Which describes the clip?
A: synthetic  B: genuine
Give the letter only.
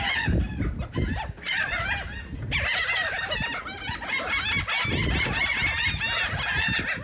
B